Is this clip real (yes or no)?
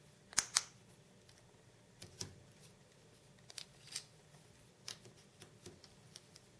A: yes